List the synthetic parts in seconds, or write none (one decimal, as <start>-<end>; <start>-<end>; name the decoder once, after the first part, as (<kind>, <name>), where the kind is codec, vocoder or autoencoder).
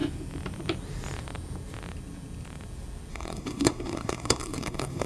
3.1-5.1 (codec, SNAC)